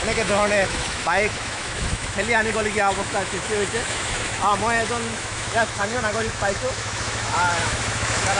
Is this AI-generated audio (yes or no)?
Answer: yes